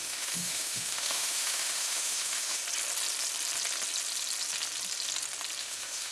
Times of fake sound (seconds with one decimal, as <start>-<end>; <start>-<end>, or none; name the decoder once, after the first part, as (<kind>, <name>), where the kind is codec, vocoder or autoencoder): 0.0-2.6 (autoencoder, DAC-VAE); 5.6-6.1